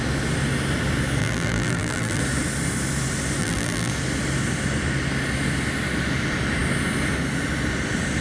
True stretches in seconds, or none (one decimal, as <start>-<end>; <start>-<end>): 0.0-1.2; 2.2-3.4; 3.9-8.2